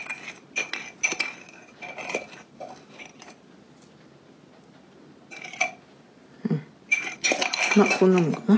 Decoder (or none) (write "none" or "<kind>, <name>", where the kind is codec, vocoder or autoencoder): none